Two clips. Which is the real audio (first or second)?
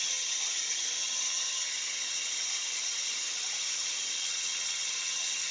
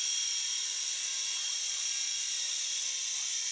second